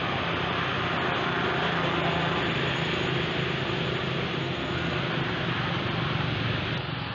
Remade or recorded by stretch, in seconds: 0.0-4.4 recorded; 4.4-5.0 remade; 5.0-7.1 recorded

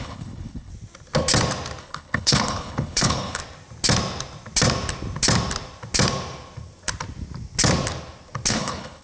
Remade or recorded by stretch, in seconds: 0.0-0.7 remade; 0.7-1.8 recorded; 1.8-3.4 remade; 3.4-8.5 recorded; 8.5-9.0 remade

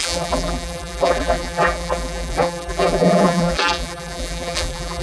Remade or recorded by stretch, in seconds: 0.0-5.0 remade

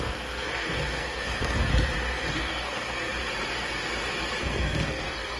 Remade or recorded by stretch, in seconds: 0.0-1.7 remade; 1.7-2.3 recorded; 2.3-3.1 remade; 3.1-4.4 recorded; 4.4-5.4 remade

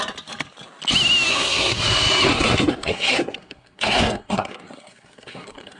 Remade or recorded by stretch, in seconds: 0.0-1.3 recorded; 1.3-1.8 remade; 1.8-2.3 recorded; 2.3-5.8 remade

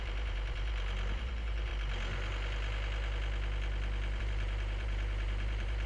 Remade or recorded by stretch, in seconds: 0.0-1.7 remade; 1.7-4.2 recorded; 4.2-5.9 remade